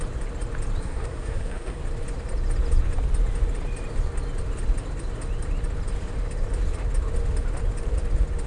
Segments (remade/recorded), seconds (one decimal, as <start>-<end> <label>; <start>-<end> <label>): 0.0-0.8 recorded; 0.8-1.8 remade; 1.8-8.5 recorded